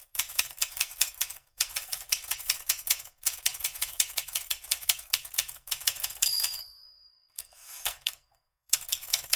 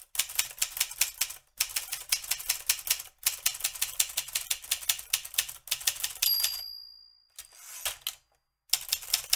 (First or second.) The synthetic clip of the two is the first